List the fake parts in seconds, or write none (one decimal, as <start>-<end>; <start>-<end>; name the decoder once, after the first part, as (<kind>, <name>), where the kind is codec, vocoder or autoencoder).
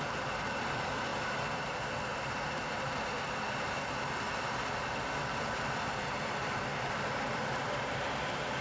0.0-1.1 (vocoder, BigVGAN v2); 1.6-8.6